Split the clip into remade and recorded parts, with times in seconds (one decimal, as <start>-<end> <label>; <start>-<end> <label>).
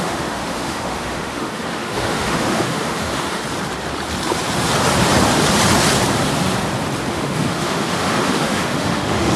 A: 0.0-3.4 remade; 3.4-7.1 recorded; 7.1-9.4 remade